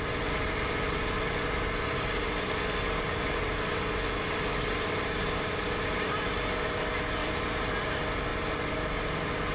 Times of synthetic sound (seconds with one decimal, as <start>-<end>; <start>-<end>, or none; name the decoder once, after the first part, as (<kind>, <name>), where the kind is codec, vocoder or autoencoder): none